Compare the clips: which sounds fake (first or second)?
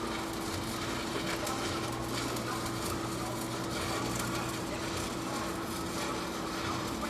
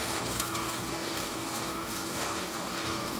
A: second